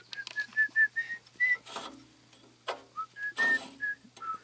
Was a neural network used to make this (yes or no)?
no